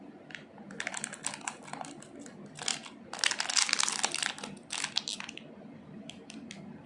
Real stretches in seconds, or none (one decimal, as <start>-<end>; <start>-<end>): 0.0-6.9